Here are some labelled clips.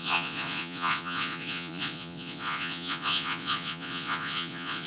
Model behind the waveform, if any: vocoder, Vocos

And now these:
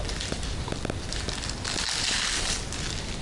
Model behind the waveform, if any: none